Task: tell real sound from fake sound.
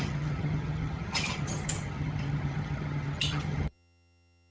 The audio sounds fake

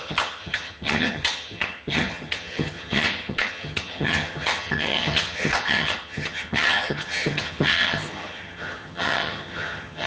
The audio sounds fake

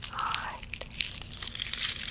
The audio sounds real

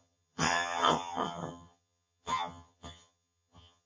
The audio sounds fake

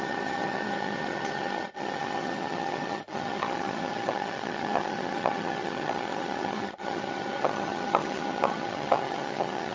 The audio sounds fake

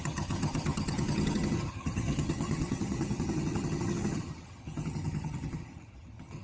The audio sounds fake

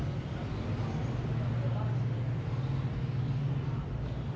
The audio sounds real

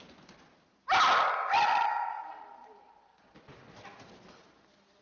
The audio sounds real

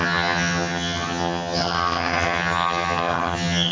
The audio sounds fake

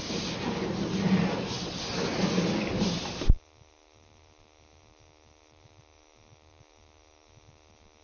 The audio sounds real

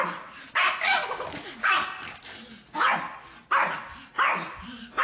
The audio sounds real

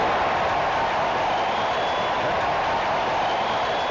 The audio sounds real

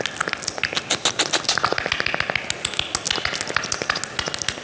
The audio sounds real